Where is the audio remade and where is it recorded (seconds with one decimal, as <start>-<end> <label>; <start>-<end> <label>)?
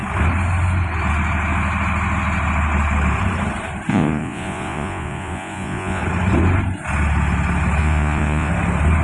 0.0-3.9 recorded; 3.9-6.0 remade; 6.0-7.8 recorded; 7.8-8.5 remade; 8.5-9.0 recorded